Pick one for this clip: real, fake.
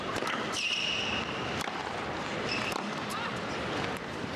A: fake